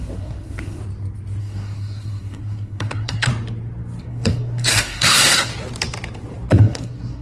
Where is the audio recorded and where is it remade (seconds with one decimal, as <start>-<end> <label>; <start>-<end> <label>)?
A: 0.0-0.8 remade; 0.8-1.4 recorded; 1.4-3.3 remade; 3.3-4.0 recorded; 4.0-5.5 remade; 5.5-6.5 recorded; 6.5-7.2 remade

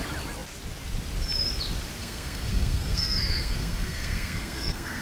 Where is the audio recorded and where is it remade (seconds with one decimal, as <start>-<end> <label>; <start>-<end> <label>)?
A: 0.0-2.0 recorded; 2.0-5.0 remade